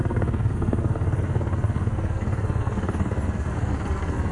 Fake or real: fake